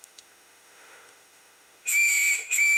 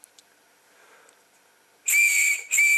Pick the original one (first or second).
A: second